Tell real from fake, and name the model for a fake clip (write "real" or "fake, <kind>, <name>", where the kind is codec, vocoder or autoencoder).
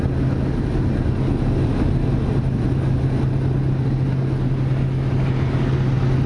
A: real